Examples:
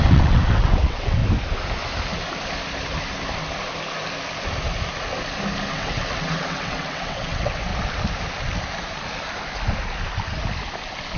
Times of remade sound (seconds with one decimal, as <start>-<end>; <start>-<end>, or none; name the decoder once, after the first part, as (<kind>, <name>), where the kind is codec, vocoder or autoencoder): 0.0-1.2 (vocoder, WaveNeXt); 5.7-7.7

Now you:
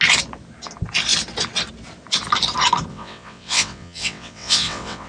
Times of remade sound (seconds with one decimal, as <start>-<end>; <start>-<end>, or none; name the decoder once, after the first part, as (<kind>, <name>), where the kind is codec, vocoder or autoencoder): 2.9-5.1 (vocoder, WaveNeXt)

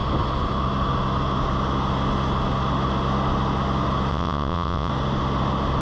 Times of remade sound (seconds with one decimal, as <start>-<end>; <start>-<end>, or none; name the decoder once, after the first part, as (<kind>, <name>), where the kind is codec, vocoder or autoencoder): 4.1-4.9 (vocoder, WaveNeXt)